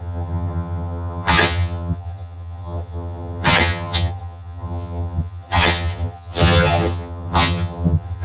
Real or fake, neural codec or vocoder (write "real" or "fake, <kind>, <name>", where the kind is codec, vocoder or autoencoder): fake, vocoder, HiFi-GAN